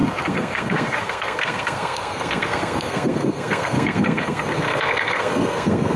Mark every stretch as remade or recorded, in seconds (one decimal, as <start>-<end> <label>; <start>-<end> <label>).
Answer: 0.0-6.0 remade